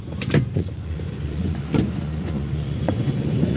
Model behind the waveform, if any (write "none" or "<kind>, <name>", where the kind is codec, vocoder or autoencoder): vocoder, Vocos